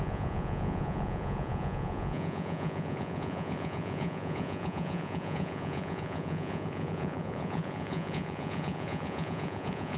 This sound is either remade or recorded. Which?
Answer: remade